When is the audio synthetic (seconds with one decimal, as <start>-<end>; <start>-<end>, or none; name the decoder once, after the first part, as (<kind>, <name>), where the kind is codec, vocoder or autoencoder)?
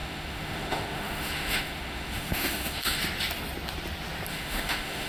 0.0-3.0 (autoencoder, DAC-VAE); 4.3-5.1